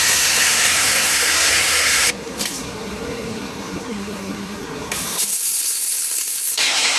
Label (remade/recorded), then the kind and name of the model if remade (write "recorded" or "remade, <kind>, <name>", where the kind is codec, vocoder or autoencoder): remade, codec, SNAC